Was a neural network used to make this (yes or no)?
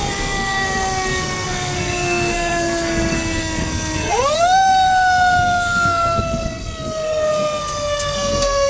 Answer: yes